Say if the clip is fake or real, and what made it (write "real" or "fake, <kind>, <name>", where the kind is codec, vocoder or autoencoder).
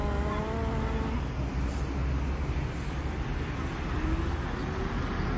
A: real